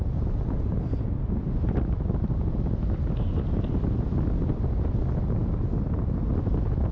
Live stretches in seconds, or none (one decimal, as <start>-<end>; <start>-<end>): 0.0-6.9